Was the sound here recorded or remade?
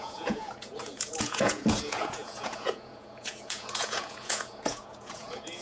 remade